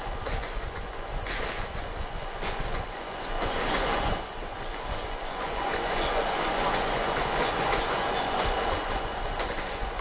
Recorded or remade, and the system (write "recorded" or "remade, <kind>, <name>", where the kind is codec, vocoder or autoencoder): remade, vocoder, Vocos